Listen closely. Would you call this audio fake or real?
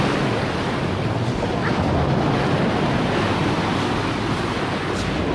real